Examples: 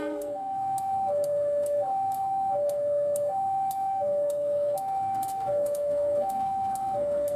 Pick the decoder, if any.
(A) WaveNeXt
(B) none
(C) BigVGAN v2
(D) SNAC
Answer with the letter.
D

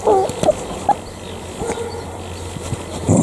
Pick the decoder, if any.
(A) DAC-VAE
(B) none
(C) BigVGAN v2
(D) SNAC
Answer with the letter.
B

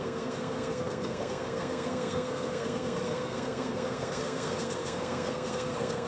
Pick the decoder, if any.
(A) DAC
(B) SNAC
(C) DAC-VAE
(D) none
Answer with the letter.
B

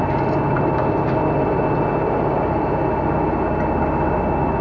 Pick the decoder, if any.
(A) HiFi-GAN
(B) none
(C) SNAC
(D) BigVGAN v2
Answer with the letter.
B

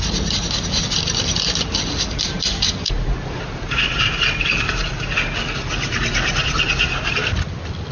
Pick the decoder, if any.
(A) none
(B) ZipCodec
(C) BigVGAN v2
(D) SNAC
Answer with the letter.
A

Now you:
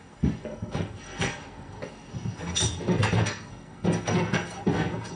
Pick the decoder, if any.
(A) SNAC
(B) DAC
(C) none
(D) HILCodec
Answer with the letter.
A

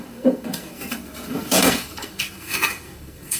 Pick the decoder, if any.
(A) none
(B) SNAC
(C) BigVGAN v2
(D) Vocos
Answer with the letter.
B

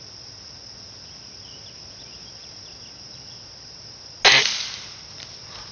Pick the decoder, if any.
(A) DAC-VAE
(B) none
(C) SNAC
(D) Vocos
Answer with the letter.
B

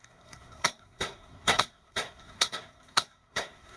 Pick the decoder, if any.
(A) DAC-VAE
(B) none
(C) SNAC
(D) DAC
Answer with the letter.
C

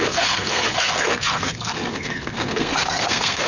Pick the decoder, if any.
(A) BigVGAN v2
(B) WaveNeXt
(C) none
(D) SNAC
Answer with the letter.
D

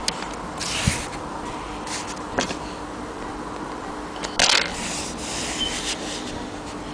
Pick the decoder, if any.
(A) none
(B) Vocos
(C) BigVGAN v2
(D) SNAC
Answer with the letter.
A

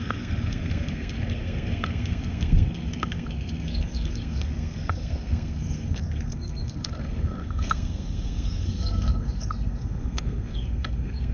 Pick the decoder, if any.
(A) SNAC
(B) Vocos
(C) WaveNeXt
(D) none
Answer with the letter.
A